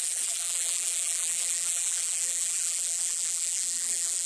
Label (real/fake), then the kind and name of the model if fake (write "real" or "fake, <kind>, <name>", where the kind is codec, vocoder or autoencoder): fake, vocoder, BigVGAN v2